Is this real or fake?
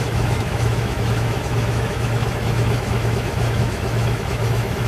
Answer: fake